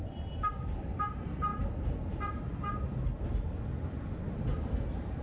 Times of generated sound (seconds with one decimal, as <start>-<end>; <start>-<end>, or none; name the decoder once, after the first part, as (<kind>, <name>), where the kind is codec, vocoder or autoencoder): none